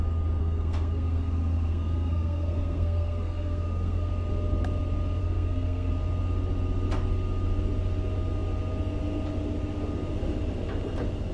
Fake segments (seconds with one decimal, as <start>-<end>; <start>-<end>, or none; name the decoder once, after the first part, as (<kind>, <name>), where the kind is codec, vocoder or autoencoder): 0.4-4.1 (codec, SNAC); 5.2-5.9